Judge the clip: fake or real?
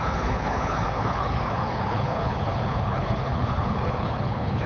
fake